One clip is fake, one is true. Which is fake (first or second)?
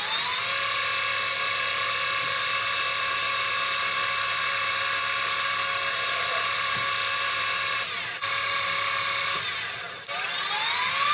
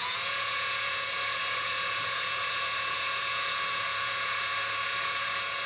second